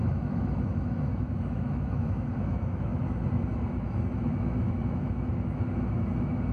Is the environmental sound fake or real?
fake